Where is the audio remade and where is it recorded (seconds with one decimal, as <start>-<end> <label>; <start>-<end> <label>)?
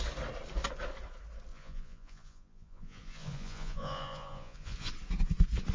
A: 0.0-1.5 recorded; 1.5-4.9 remade; 4.9-5.7 recorded